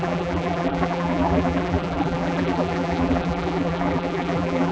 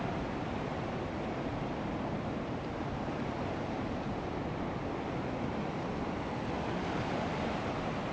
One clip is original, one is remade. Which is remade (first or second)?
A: first